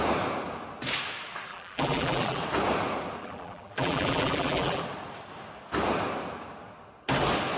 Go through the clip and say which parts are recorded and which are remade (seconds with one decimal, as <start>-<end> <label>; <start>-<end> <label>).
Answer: 0.0-1.5 recorded; 1.5-2.4 remade; 2.4-3.2 recorded; 3.2-4.8 remade; 4.8-7.6 recorded